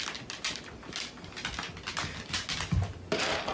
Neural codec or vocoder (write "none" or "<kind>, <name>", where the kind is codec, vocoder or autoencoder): none